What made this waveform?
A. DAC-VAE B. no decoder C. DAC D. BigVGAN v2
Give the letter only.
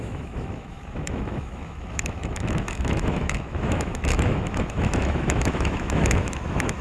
A